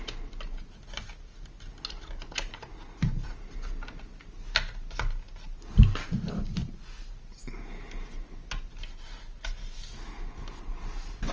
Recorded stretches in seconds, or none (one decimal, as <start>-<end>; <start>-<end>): 0.0-11.3